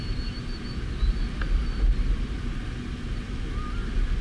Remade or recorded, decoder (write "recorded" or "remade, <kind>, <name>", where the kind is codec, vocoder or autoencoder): recorded